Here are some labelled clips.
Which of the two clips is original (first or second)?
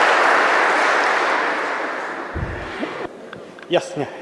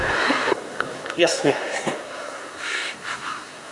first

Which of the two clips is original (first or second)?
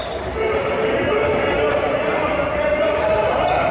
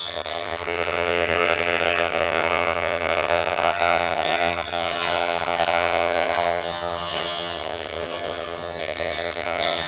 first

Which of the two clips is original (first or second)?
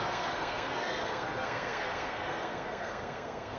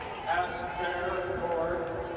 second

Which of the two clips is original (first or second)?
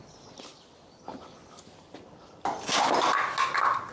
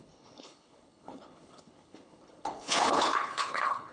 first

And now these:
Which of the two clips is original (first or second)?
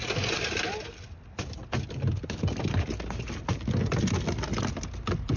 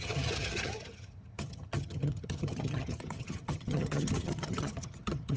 first